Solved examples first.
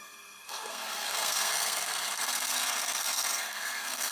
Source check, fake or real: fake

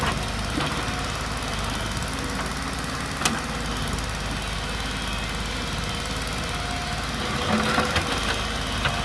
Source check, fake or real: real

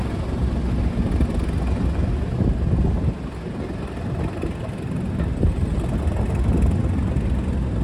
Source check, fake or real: real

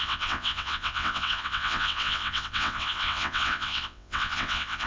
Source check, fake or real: fake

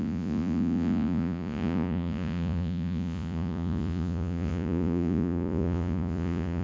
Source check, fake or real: fake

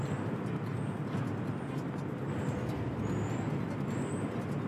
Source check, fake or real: real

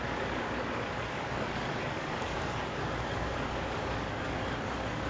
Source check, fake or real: fake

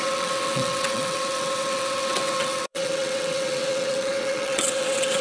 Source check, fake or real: fake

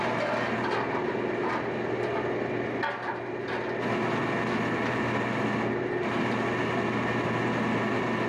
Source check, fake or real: real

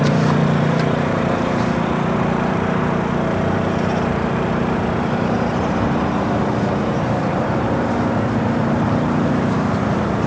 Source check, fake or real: fake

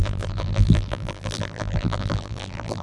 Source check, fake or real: fake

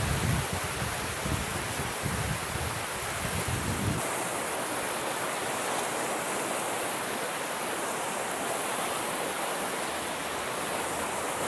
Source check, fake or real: real